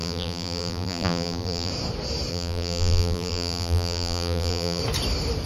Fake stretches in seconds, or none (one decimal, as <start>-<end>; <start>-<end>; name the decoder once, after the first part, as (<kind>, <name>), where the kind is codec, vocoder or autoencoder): 0.0-1.7 (vocoder, BigVGAN v2); 2.3-4.8